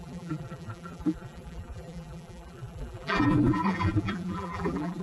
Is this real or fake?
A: fake